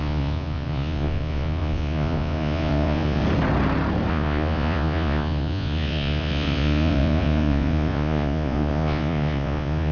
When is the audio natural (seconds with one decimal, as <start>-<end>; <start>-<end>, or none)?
3.2-4.1